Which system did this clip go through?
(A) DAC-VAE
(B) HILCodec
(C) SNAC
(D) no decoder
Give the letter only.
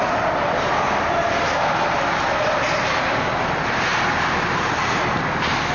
D